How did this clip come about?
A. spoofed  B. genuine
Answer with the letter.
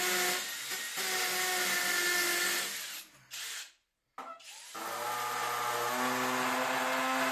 B